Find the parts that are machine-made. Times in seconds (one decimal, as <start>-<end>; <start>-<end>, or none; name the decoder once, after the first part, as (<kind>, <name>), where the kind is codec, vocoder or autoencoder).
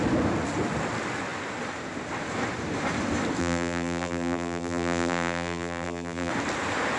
3.4-6.3 (vocoder, BigVGAN v2)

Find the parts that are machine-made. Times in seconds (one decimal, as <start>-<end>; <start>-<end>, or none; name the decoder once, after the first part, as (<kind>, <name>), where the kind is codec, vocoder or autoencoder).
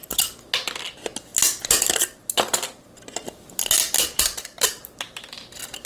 4.5-5.3 (vocoder, BigVGAN v2)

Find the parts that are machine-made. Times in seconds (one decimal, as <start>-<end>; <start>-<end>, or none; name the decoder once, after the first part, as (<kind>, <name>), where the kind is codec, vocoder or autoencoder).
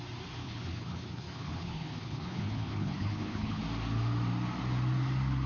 0.4-3.6 (codec, HILCodec)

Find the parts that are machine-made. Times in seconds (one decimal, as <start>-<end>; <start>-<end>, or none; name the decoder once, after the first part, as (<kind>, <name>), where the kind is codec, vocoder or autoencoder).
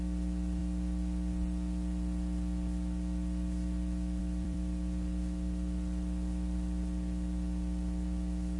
0.0-0.6 (vocoder, BigVGAN v2); 4.2-8.6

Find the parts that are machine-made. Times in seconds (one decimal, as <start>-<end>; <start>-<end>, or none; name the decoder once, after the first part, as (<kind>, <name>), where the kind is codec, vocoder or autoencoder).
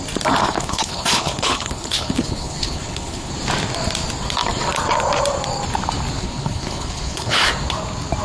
0.4-3.3 (codec, HILCodec); 6.2-7.5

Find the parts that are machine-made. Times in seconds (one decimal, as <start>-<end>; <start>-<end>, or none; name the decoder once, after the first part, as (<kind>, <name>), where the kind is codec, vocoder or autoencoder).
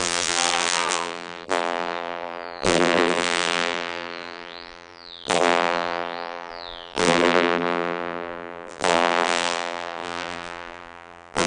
0.0-11.5 (vocoder, BigVGAN v2)